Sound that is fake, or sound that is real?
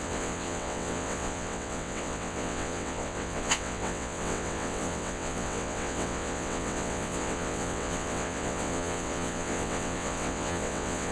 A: fake